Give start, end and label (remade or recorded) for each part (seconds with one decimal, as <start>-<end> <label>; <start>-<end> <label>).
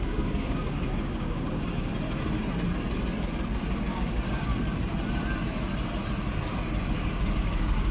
0.0-1.9 remade; 1.9-3.9 recorded; 3.9-4.5 remade; 4.5-6.9 recorded; 6.9-7.9 remade